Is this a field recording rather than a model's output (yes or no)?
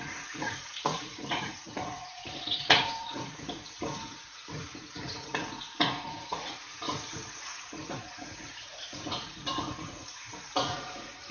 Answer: no